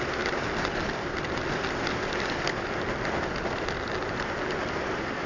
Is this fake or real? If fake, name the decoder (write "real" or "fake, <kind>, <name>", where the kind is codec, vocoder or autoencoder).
real